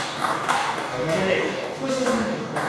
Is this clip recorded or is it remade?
remade